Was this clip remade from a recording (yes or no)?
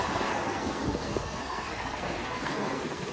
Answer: yes